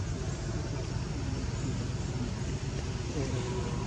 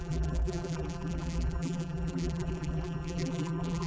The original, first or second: first